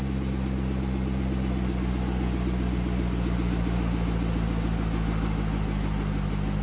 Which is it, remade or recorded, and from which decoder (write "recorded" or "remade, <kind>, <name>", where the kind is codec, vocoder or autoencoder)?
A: recorded